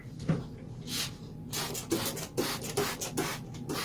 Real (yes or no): yes